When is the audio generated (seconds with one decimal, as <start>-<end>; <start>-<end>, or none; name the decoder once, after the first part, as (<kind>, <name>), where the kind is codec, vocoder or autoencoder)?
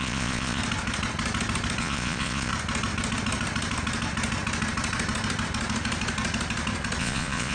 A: 0.0-0.6 (vocoder, Vocos); 1.8-2.5; 7.0-7.5